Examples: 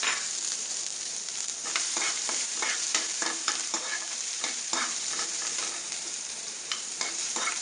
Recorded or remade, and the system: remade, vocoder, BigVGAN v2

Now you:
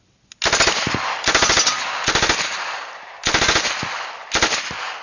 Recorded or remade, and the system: recorded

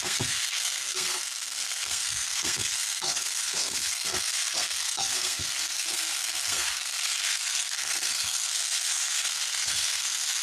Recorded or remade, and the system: remade, codec, SNAC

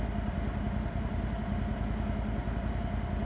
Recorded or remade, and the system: recorded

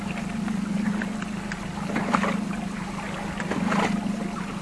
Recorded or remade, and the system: recorded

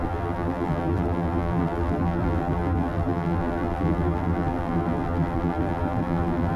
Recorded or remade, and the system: remade, vocoder, BigVGAN v2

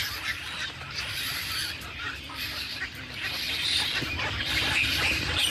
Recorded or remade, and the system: remade, vocoder, BigVGAN v2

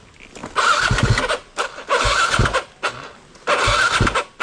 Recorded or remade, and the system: recorded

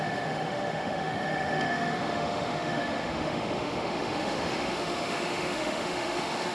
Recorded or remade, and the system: remade, autoencoder, DAC-VAE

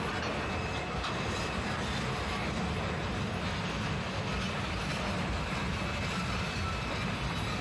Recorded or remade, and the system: recorded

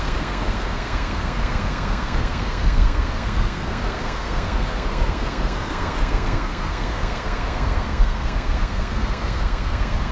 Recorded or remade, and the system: remade, codec, SNAC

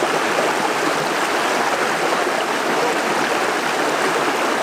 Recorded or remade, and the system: recorded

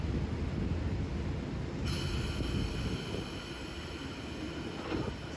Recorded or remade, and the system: recorded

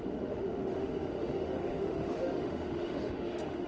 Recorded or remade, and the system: remade, autoencoder, DAC-VAE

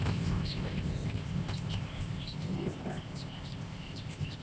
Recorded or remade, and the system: remade, codec, ZipCodec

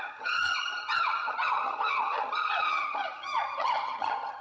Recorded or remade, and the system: remade, vocoder, HiFi-GAN